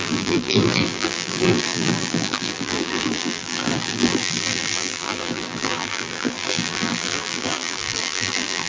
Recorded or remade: remade